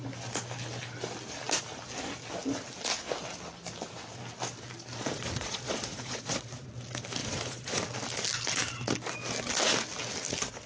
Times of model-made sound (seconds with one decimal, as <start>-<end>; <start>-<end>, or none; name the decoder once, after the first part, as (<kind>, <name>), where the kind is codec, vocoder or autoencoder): 5.0-6.7 (vocoder, Vocos); 7.2-7.8